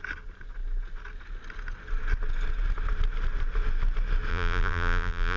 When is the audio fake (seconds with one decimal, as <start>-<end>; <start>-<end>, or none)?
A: 4.3-5.4